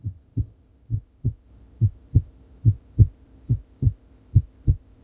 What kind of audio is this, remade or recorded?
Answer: remade